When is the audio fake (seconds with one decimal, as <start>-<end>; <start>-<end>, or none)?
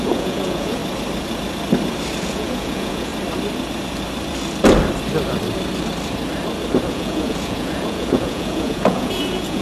0.0-0.8; 2.2-3.1; 6.9-9.6